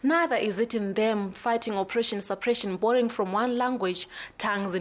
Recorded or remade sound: recorded